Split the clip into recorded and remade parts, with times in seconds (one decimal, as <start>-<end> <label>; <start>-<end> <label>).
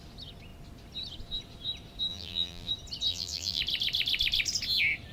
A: 0.0-2.1 recorded; 2.1-2.7 remade; 2.7-3.1 recorded; 3.1-3.6 remade; 3.6-5.1 recorded